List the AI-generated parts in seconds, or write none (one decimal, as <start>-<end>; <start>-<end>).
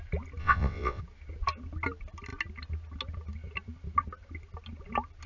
0.4-1.0